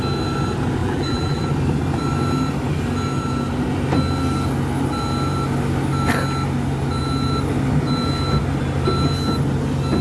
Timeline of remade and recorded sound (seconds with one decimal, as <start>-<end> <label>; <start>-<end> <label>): 0.0-0.8 recorded; 0.8-1.4 remade; 1.4-10.0 recorded